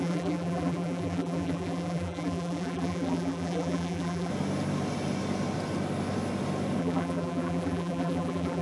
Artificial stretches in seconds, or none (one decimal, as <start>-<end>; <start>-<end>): 0.0-4.3; 6.8-8.6